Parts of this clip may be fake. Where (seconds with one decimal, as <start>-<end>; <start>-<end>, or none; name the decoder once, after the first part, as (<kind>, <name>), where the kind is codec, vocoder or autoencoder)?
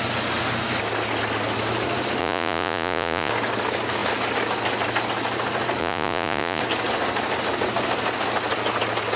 2.2-3.3 (vocoder, Vocos); 5.8-6.6